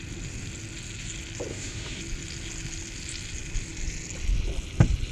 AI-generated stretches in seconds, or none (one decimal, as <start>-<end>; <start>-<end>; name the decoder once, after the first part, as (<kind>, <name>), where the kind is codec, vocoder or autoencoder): 1.5-2.0 (autoencoder, DAC-VAE)